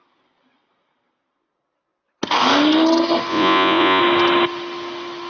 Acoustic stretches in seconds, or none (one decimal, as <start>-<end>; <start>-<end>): 0.0-3.3; 4.0-5.3